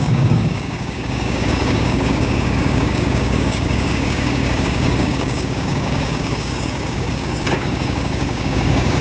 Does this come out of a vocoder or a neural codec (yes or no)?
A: yes